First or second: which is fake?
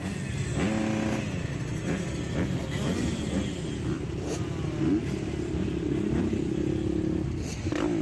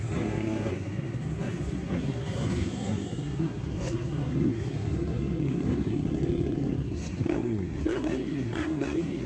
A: second